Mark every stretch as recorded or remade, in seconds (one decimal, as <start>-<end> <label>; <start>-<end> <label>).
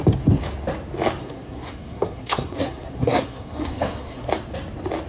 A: 0.0-1.2 recorded; 1.2-4.3 remade; 4.3-5.1 recorded